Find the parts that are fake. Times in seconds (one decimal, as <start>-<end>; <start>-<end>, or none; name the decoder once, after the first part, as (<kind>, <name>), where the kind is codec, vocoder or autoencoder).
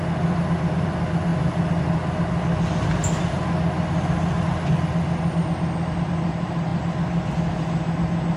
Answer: none